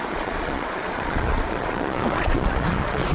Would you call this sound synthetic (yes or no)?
yes